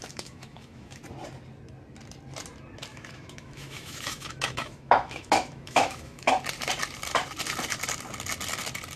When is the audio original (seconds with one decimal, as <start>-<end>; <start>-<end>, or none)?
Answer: 1.0-2.9; 6.3-9.0